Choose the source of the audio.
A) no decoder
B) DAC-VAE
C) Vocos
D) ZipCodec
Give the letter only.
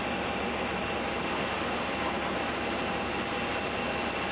A